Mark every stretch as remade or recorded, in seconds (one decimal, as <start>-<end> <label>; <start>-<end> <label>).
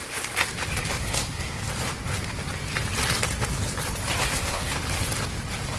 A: 0.0-1.0 recorded; 1.0-1.6 remade; 1.6-4.2 recorded; 4.2-4.7 remade; 4.7-5.8 recorded